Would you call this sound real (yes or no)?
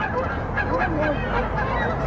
yes